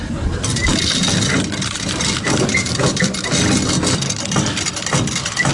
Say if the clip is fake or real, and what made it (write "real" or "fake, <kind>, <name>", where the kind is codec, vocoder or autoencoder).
real